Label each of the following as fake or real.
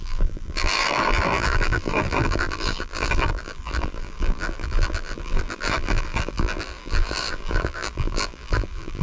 fake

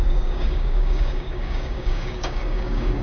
fake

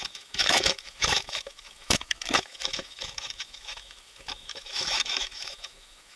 fake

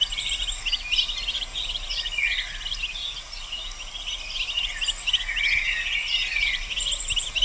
real